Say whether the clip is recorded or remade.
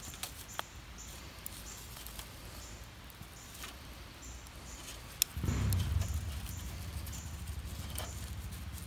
recorded